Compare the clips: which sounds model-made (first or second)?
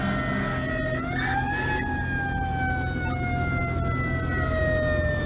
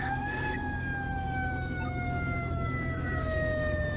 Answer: second